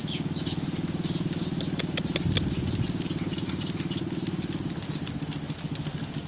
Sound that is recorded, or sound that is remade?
recorded